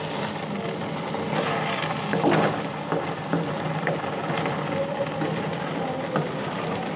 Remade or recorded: recorded